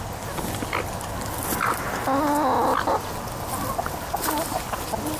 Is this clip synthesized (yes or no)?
no